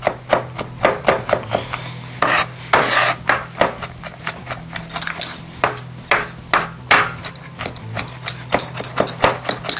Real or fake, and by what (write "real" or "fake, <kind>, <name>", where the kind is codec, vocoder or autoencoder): real